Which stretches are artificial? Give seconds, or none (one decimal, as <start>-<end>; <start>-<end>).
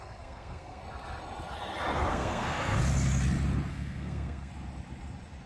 0.0-0.8; 2.1-2.8; 3.7-4.5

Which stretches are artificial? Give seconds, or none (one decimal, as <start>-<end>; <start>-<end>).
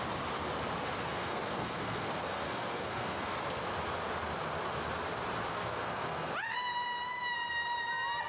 1.0-3.4; 5.5-6.3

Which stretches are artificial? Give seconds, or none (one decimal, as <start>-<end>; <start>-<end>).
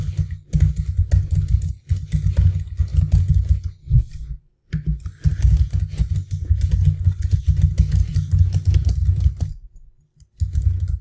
none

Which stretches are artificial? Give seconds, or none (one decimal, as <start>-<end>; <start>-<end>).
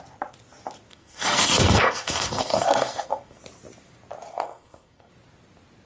0.9-3.4; 4.3-5.1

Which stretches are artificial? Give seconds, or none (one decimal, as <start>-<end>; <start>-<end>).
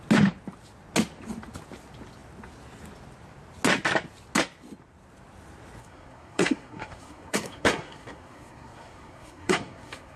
5.8-10.2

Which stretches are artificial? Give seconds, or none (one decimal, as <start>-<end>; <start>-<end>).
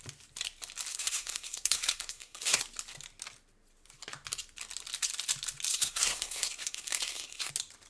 0.9-2.6; 5.7-7.5